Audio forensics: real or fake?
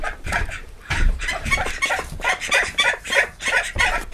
fake